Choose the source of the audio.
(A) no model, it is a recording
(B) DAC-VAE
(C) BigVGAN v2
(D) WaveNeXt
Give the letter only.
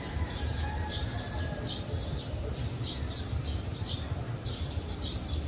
A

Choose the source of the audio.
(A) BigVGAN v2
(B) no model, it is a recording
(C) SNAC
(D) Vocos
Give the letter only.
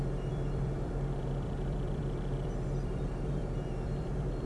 A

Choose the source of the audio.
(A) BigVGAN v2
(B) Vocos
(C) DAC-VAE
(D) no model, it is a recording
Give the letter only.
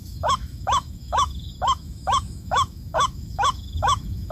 C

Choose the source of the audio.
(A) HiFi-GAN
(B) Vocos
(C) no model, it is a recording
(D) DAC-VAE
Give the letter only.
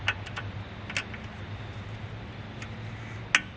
C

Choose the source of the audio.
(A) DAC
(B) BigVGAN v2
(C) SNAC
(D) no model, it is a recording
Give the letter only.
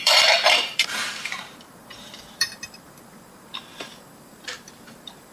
B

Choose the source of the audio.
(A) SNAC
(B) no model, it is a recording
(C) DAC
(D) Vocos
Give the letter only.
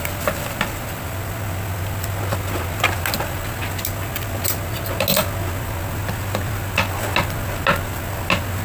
B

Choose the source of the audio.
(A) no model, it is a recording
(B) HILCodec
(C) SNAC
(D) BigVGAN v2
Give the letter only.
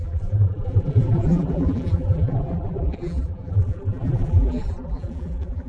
D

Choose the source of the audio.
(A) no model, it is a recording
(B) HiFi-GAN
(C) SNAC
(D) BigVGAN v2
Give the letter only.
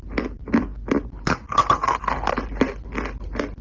A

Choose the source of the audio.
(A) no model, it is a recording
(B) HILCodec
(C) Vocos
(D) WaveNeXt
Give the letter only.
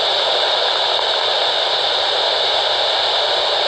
A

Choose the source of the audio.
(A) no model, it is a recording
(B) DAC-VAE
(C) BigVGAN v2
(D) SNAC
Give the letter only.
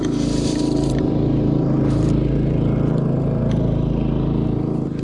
C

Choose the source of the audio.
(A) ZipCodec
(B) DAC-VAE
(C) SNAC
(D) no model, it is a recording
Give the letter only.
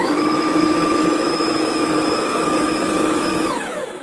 B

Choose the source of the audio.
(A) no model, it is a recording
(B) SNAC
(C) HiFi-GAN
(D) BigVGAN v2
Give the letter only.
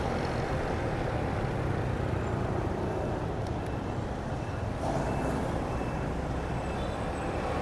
A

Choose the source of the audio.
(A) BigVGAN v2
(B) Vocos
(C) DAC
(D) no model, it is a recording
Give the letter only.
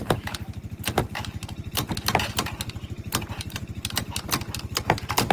A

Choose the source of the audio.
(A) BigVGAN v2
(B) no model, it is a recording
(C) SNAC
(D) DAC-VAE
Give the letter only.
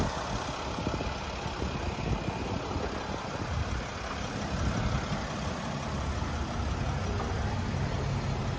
B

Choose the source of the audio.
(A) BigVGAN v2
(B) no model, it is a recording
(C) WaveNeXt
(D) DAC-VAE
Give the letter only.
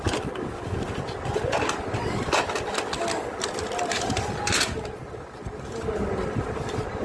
B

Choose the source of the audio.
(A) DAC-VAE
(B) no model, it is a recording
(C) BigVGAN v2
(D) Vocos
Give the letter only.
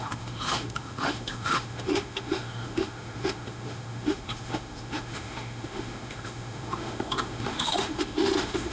A